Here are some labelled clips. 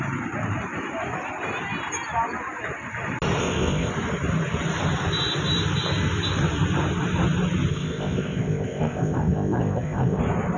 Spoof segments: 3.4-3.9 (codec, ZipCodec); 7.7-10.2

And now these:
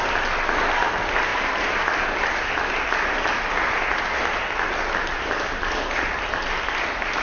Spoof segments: none

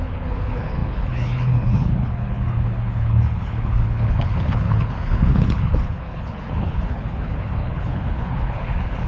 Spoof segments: 0.0-9.1 (codec, HILCodec)

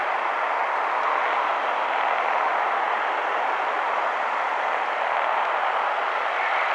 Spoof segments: none

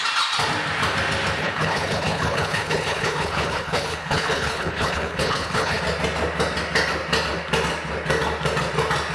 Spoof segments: 1.4-5.8 (codec, HILCodec)